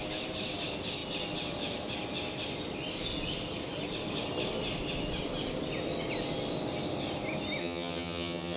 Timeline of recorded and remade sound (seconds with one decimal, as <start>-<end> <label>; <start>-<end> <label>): 0.0-7.6 recorded; 7.6-8.6 remade